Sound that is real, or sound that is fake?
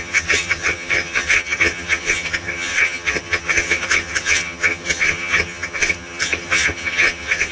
fake